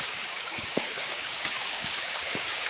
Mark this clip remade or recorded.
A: remade